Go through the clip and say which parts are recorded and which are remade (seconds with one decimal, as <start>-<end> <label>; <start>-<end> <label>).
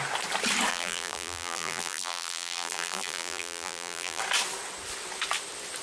0.0-0.7 recorded; 0.7-4.2 remade; 4.2-5.8 recorded